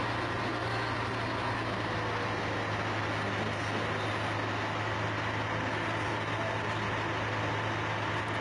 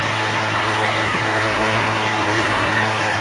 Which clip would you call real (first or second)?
first